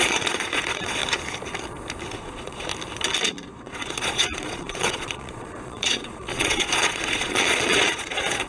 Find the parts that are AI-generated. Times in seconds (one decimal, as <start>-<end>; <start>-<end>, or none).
0.0-1.0; 2.1-2.7; 3.2-8.5